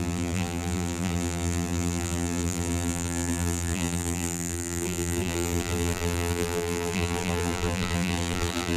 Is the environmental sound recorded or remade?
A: remade